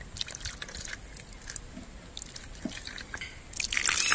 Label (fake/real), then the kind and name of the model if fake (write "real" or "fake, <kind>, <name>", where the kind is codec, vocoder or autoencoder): real